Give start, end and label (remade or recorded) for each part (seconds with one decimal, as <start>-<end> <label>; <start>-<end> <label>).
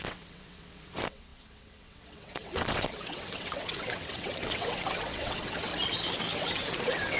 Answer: 0.0-5.7 remade; 5.7-6.8 recorded; 6.8-7.2 remade